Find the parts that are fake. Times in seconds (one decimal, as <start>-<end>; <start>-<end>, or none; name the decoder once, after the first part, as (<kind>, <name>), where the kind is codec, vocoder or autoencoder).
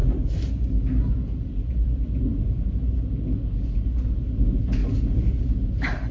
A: 4.8-5.4 (vocoder, BigVGAN v2)